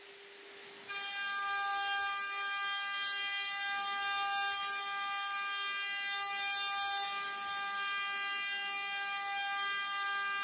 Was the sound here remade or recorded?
recorded